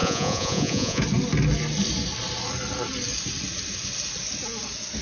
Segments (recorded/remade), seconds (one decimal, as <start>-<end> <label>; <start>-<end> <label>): 0.0-1.0 remade; 1.0-5.0 recorded